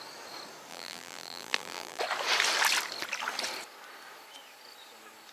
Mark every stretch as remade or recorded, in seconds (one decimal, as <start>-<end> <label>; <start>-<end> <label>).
0.0-0.7 recorded; 0.7-2.0 remade; 2.0-5.3 recorded